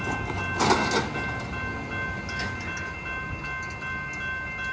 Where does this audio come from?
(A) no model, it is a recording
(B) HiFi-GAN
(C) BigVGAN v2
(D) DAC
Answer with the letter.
A